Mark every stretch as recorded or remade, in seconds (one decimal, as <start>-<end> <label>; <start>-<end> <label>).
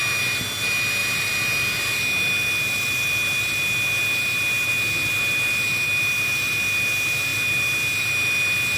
0.0-8.8 recorded